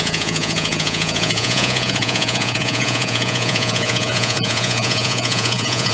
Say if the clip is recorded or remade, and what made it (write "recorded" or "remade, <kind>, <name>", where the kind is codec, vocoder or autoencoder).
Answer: remade, vocoder, Vocos